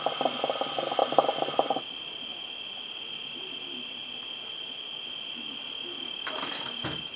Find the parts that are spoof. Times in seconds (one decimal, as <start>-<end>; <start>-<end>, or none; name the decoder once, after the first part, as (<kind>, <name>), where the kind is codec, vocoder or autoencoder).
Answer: 1.0-1.8 (vocoder, BigVGAN v2)